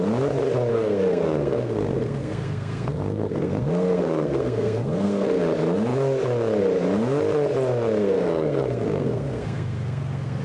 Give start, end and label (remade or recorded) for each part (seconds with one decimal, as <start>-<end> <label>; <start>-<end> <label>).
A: 0.0-0.7 recorded; 0.7-5.4 remade; 5.4-8.0 recorded; 8.0-10.4 remade